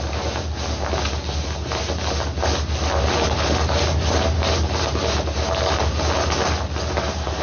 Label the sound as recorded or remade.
recorded